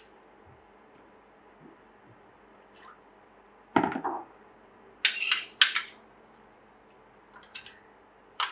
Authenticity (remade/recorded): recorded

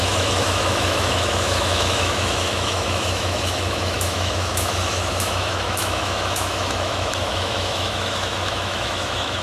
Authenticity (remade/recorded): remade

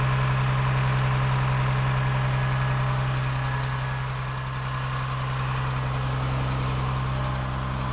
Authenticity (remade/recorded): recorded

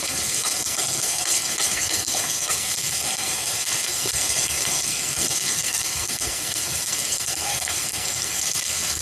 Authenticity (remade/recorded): remade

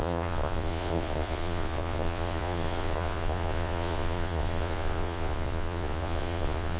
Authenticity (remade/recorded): remade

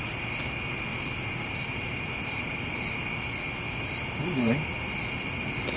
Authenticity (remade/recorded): recorded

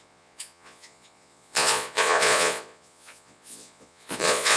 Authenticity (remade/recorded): remade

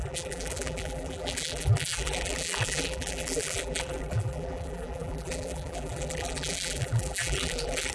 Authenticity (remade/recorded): remade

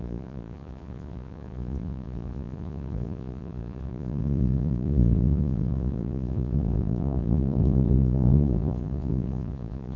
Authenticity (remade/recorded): remade